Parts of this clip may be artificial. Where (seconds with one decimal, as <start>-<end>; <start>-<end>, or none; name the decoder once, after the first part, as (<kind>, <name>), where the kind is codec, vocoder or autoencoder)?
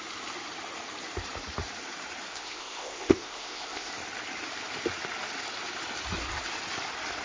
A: 2.3-3.9 (codec, ZipCodec)